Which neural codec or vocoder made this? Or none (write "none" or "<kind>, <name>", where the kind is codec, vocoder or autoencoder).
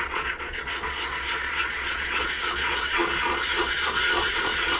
vocoder, Vocos